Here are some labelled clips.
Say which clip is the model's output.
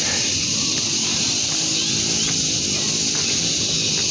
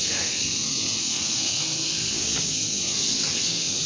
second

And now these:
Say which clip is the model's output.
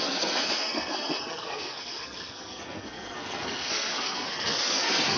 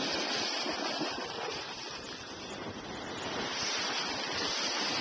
first